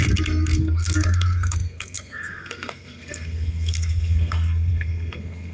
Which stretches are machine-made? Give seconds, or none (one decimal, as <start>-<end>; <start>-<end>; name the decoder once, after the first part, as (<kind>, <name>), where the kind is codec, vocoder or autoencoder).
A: 0.0-5.5 (codec, SNAC)